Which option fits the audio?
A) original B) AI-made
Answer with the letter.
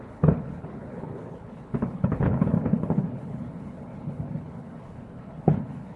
B